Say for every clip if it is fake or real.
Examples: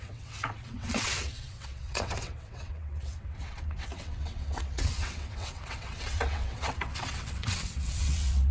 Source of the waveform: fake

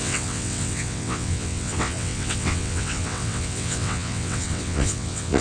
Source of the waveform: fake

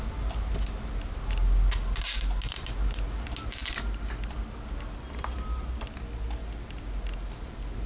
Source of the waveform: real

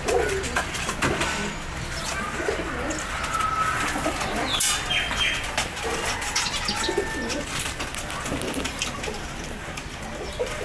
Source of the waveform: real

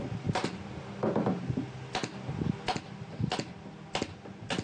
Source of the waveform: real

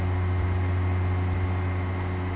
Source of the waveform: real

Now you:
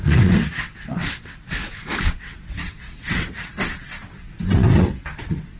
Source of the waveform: fake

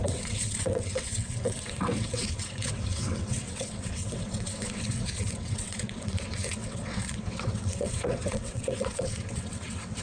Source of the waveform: fake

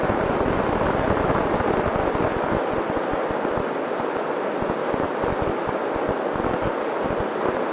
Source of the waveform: real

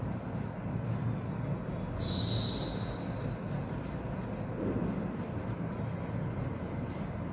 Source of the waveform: real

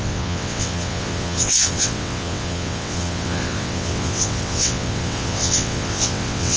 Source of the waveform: fake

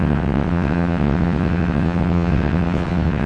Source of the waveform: fake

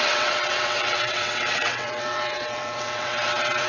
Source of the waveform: fake